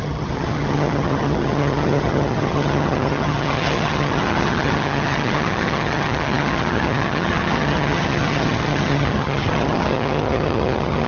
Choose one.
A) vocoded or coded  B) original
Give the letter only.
A